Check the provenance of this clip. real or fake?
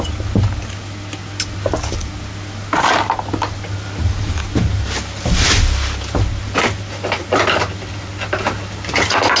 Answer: real